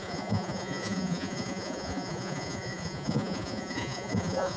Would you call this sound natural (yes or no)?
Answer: no